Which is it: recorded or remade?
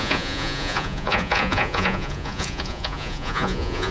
remade